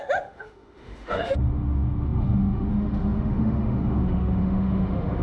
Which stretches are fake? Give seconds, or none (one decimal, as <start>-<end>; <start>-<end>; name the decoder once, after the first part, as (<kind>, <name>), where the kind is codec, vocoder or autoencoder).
0.0-5.2 (autoencoder, DAC-VAE)